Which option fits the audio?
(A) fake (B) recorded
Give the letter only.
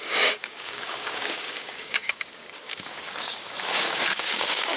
A